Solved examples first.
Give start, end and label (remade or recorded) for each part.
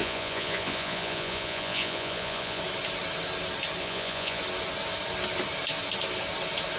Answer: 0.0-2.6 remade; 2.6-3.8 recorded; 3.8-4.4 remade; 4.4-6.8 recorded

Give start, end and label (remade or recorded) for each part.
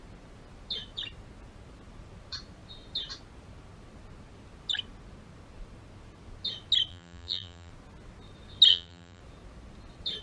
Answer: 0.0-6.9 recorded; 6.9-7.7 remade; 7.7-8.7 recorded; 8.7-9.2 remade; 9.2-10.2 recorded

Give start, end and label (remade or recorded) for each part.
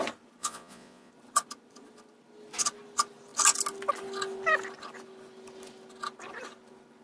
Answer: 0.0-0.4 recorded; 0.4-1.1 remade; 1.1-7.0 recorded